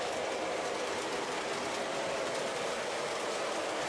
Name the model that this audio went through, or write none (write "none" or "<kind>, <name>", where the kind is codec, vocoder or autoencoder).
none